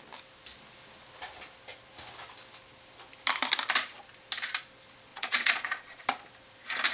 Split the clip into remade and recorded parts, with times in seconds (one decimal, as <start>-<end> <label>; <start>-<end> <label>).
0.0-5.1 recorded; 5.1-6.0 remade; 6.0-6.9 recorded